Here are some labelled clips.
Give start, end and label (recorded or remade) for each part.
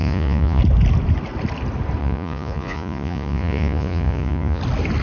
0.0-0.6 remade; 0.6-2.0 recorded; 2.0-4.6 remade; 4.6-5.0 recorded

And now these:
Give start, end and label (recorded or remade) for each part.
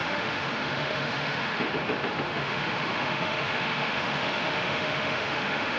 0.0-1.7 remade; 1.7-2.3 recorded; 2.3-5.8 remade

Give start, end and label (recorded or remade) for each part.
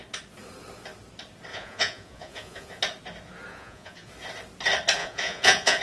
0.0-1.5 recorded; 1.5-2.8 remade; 2.8-3.5 recorded; 3.5-4.1 remade; 4.1-5.0 recorded; 5.0-5.8 remade